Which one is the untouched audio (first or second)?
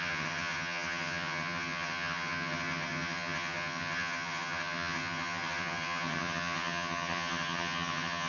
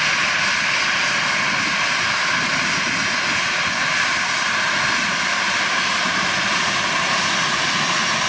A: second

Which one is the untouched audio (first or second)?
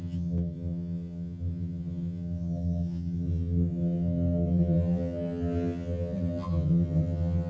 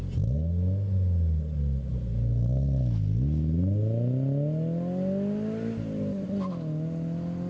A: second